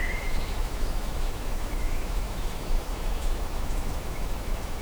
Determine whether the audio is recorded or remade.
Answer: remade